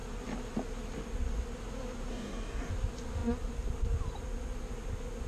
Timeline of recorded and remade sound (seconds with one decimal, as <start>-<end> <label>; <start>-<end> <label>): 0.0-2.1 recorded; 2.1-2.7 remade; 2.7-5.3 recorded